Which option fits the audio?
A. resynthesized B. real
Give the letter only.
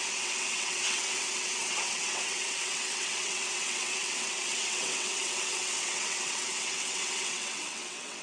A